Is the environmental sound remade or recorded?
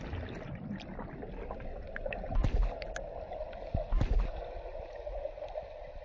recorded